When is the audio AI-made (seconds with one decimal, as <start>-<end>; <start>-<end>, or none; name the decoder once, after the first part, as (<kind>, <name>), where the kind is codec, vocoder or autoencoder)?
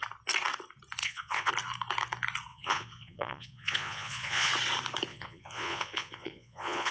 1.0-1.5 (vocoder, Vocos); 2.5-4.5; 5.1-6.9